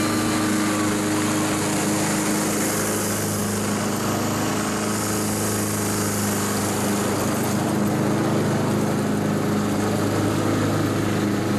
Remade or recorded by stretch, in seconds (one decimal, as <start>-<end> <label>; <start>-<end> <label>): 0.0-11.6 recorded

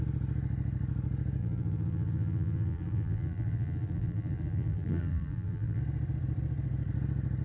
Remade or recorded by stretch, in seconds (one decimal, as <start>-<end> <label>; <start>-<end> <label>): 0.0-1.4 recorded; 1.4-5.8 remade; 5.8-7.4 recorded